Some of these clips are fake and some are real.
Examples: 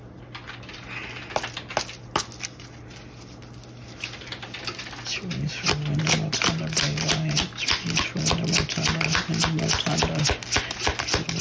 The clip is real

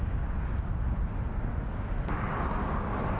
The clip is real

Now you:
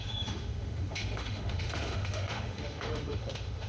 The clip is fake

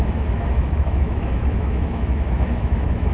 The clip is fake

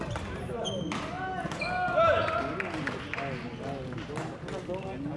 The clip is real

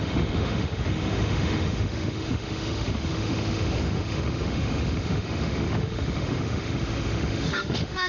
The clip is fake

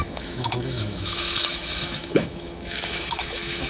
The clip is fake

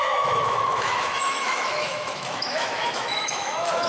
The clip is fake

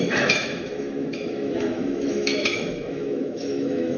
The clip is fake